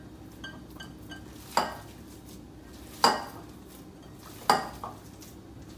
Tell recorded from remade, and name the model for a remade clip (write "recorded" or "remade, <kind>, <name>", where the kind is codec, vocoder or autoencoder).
recorded